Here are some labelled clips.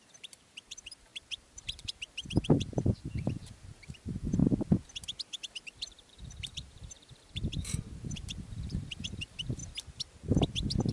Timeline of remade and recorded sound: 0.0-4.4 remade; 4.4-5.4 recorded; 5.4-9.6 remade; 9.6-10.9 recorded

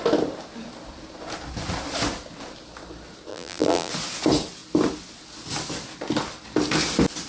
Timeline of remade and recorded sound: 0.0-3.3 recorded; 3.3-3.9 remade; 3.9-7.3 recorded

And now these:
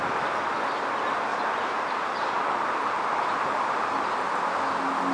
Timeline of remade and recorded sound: 0.0-1.3 recorded; 1.3-4.4 remade; 4.4-5.1 recorded